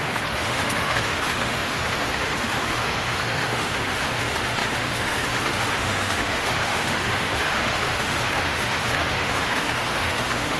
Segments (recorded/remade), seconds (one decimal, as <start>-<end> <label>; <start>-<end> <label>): 0.0-10.6 remade